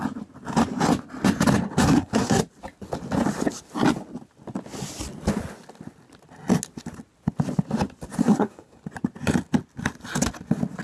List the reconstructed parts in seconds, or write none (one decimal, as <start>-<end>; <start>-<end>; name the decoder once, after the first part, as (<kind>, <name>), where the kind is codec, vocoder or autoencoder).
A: 1.8-2.4 (codec, SNAC); 8.2-8.8